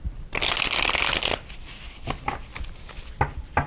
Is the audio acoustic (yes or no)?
yes